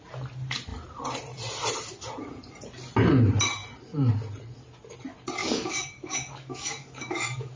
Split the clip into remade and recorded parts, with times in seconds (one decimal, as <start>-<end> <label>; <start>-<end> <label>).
0.0-5.4 recorded; 5.4-7.6 remade